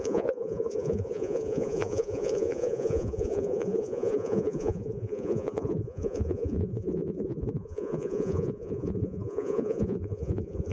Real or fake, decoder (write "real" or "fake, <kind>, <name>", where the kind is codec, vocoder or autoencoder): fake, vocoder, Vocos